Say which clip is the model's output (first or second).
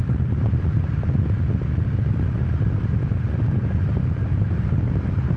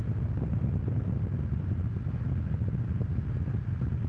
first